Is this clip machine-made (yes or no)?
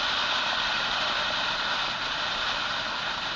no